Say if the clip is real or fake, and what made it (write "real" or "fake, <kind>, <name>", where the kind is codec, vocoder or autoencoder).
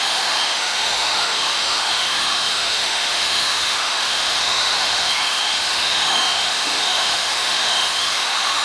fake, autoencoder, DAC-VAE